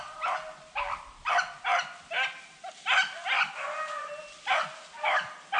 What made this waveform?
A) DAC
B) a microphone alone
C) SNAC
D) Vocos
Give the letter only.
B